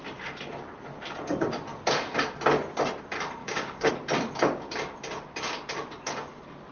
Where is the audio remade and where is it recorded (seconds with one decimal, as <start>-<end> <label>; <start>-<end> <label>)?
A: 0.0-3.4 recorded; 3.4-3.9 remade; 3.9-6.7 recorded